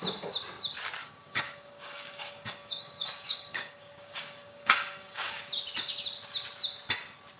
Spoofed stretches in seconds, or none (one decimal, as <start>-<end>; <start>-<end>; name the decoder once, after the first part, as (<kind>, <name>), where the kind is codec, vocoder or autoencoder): 1.0-5.4 (codec, DAC)